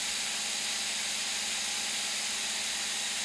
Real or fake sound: real